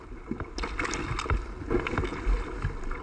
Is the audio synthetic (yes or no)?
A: no